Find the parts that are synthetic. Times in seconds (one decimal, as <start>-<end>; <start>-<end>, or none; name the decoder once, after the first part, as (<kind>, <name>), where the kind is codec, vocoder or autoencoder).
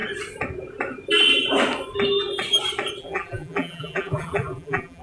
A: 3.0-5.0 (vocoder, BigVGAN v2)